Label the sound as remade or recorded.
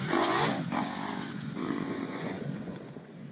remade